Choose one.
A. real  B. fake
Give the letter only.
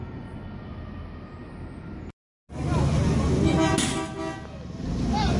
A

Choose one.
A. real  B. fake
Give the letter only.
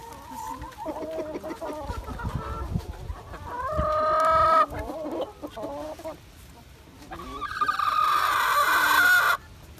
A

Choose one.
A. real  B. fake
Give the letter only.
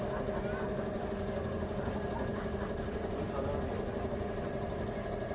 A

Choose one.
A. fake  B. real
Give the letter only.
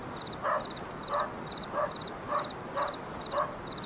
B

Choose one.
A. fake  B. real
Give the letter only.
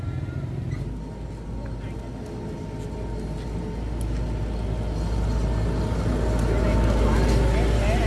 B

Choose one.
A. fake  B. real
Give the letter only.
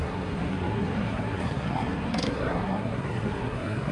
A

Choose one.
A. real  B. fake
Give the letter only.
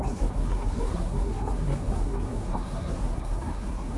B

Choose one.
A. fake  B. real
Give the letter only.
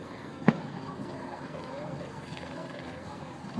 A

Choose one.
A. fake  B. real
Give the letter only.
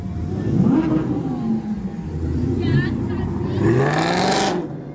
B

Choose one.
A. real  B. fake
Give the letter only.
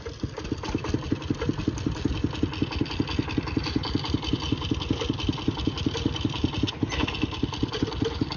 A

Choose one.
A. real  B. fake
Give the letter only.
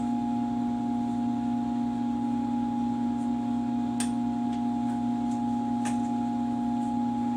A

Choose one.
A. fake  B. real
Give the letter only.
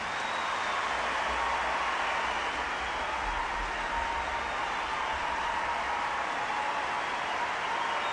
B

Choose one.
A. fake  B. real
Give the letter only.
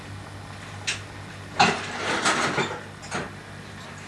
B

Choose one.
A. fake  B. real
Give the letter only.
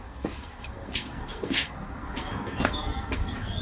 A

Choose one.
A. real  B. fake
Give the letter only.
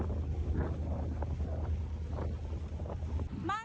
A